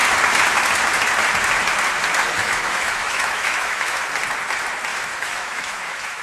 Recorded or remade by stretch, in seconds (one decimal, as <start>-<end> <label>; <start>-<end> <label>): 0.0-2.4 recorded; 2.4-4.0 remade; 4.0-4.9 recorded; 4.9-6.2 remade